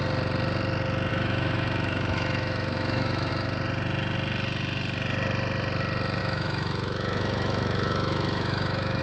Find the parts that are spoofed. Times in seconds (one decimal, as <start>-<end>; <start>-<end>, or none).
1.1-3.3; 6.2-9.0